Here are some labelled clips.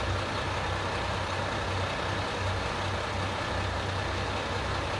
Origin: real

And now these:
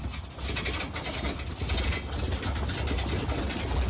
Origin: real